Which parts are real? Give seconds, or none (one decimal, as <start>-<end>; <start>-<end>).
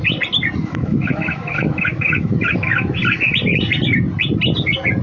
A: 0.0-0.6; 3.0-5.0